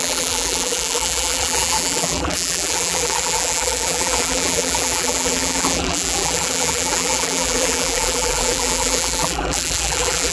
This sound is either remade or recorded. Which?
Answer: remade